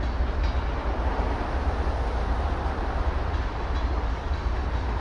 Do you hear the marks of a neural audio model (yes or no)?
no